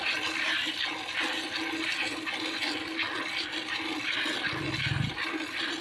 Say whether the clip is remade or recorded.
recorded